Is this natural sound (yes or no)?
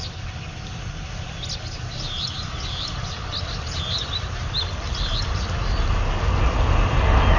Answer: yes